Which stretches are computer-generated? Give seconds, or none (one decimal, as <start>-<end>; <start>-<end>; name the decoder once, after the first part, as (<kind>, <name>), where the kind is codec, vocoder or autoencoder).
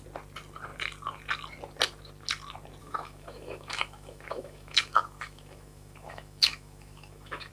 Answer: 2.8-7.5 (autoencoder, DAC-VAE)